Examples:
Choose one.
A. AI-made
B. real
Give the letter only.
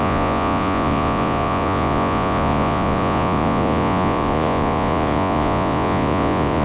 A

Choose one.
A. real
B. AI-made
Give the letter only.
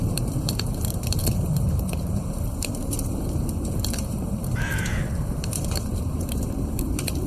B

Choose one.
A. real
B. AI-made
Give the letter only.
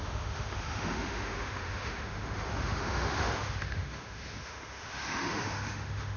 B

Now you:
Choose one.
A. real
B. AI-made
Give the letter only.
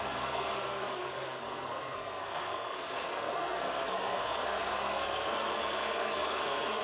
B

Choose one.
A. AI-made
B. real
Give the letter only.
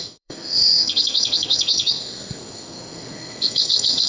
A